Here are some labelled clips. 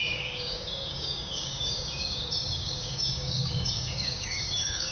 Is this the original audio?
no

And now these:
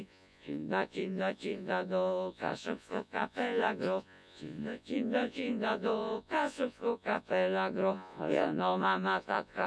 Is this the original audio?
no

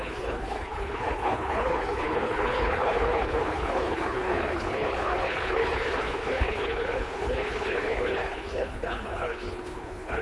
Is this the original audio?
no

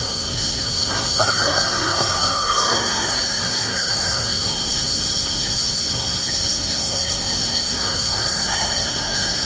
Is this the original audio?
no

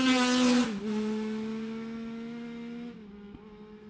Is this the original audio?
yes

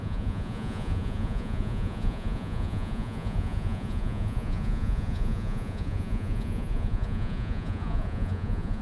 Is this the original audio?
no